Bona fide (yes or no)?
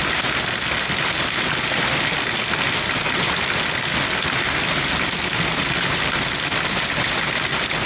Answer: yes